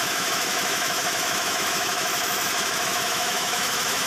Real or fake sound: fake